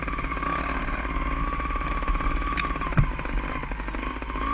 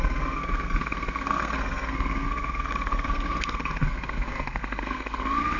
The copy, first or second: second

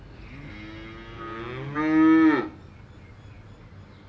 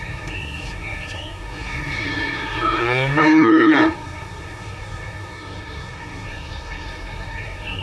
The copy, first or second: second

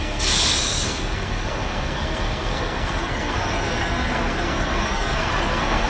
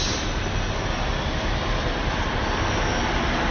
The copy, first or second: first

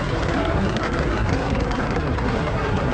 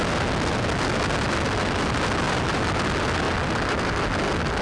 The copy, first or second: first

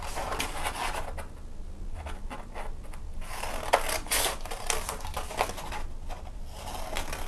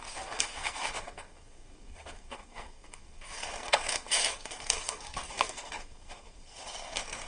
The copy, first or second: second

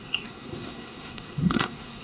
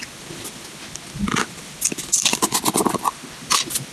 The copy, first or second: first